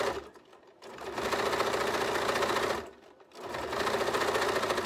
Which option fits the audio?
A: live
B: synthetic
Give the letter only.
A